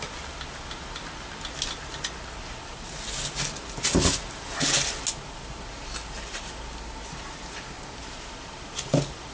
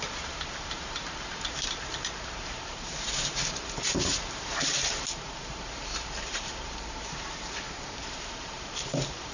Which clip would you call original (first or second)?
first